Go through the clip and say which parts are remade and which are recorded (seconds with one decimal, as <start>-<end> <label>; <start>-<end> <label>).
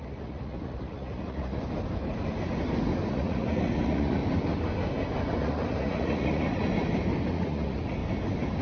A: 0.0-1.6 remade; 1.6-3.1 recorded; 3.1-4.2 remade; 4.2-5.4 recorded; 5.4-6.7 remade; 6.7-7.3 recorded; 7.3-8.0 remade; 8.0-8.6 recorded